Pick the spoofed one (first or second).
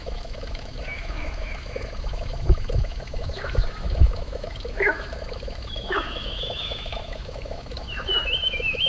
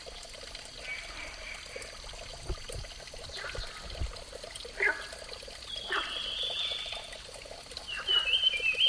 first